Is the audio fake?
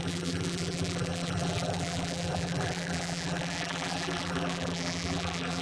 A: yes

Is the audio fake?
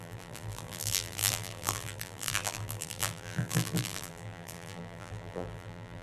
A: yes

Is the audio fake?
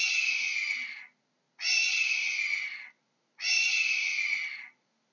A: no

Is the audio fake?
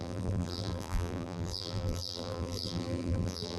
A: yes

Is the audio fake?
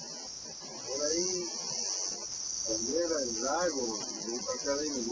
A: no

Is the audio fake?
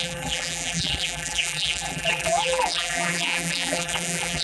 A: yes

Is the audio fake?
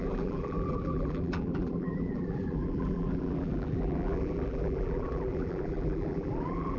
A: yes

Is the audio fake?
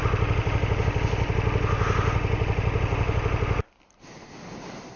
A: no